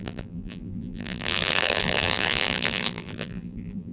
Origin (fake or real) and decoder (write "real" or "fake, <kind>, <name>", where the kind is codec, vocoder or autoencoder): fake, vocoder, BigVGAN v2